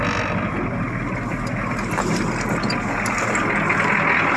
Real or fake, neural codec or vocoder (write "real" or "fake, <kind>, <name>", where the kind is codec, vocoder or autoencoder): real